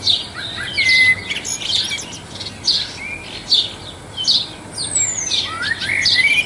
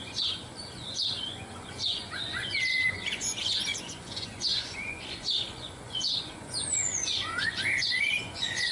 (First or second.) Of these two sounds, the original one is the first